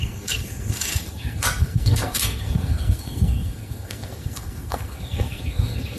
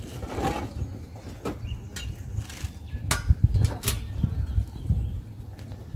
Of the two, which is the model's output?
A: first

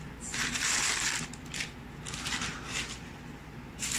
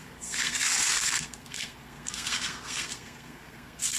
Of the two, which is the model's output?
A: second